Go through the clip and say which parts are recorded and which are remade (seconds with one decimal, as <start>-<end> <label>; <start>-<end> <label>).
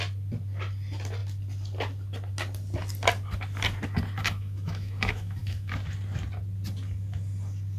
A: 0.0-4.2 recorded; 4.2-5.7 remade; 5.7-7.8 recorded